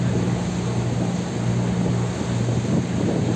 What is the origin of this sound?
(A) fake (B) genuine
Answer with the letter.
B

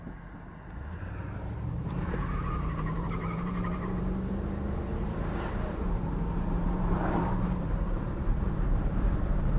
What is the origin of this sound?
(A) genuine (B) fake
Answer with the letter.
B